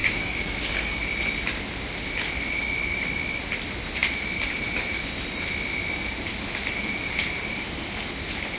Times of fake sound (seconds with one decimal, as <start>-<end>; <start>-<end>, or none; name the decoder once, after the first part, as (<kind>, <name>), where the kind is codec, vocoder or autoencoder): 0.0-1.0 (codec, DAC)